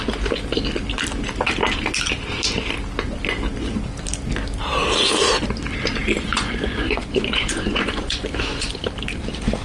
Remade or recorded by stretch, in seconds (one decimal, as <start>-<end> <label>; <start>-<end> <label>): 0.0-6.3 recorded; 6.3-8.8 remade; 8.8-9.6 recorded